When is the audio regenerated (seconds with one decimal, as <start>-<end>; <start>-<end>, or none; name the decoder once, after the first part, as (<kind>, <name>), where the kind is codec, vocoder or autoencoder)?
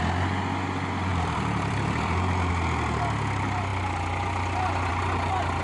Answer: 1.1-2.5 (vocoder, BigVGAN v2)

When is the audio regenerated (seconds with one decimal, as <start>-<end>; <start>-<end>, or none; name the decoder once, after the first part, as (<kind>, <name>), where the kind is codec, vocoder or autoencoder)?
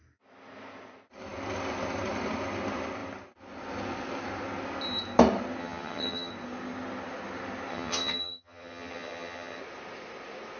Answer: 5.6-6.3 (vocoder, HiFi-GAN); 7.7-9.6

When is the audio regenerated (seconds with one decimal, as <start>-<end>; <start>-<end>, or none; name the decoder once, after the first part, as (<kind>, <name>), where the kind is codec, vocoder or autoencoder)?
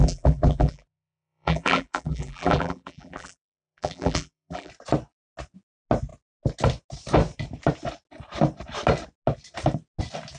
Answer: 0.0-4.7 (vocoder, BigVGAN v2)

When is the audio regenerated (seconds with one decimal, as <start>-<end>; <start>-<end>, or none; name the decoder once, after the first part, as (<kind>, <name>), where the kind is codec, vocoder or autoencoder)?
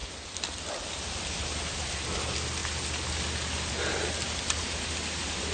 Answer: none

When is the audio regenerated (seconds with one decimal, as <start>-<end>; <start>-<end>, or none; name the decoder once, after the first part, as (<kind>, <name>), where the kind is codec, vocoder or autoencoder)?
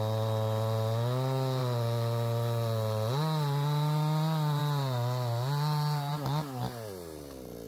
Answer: none